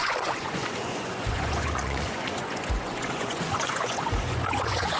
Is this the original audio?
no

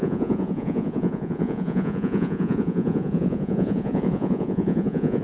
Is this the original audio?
no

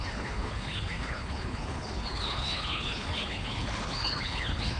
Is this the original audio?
no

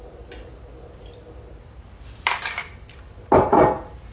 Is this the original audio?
yes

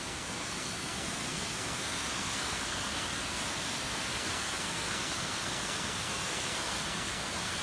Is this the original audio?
no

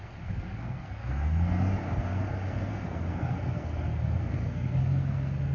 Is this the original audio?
no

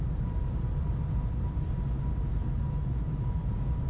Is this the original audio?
no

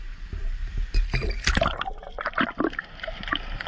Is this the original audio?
no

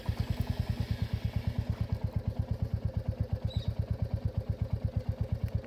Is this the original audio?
yes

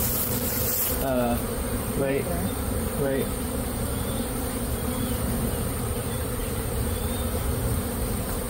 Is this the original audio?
no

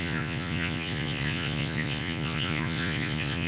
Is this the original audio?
no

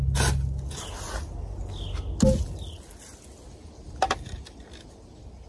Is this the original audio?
yes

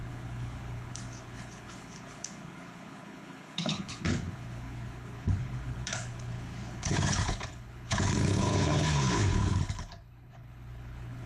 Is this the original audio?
no